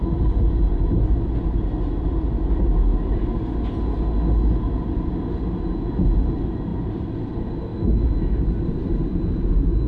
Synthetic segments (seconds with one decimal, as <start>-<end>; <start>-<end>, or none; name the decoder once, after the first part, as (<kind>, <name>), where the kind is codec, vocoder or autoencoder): 7.7-8.4 (autoencoder, DAC-VAE)